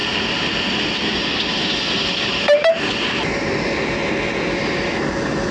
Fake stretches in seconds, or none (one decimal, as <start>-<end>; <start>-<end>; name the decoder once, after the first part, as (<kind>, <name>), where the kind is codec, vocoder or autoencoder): 0.0-2.9 (vocoder, BigVGAN v2)